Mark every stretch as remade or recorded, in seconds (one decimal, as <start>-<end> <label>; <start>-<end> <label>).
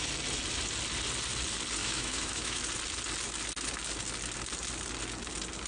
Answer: 0.0-1.8 recorded; 1.8-2.6 remade; 2.6-5.7 recorded